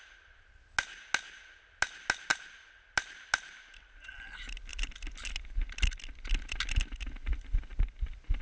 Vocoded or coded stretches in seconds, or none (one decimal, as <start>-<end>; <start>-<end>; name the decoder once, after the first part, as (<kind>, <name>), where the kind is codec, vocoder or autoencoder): none